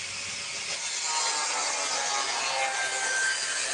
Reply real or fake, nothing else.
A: real